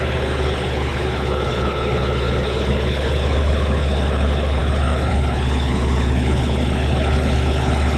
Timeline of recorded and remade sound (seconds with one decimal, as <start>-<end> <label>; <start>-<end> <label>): 0.0-8.0 remade